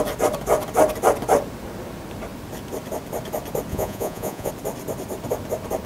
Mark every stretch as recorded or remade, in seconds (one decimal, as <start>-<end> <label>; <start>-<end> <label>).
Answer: 0.0-3.7 recorded; 3.7-4.5 remade; 4.5-5.9 recorded